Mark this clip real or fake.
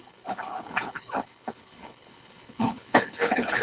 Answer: fake